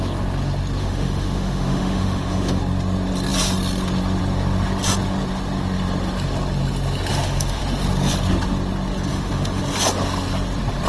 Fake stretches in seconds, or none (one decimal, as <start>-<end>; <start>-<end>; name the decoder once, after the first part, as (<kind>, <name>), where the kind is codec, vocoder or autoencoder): 0.8-2.6 (autoencoder, DAC-VAE); 7.1-7.6; 9.1-9.6